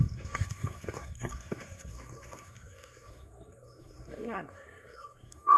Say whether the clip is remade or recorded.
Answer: remade